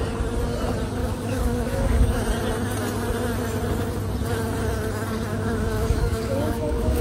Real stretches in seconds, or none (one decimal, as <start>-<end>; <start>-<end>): 0.0-1.0; 2.2-5.3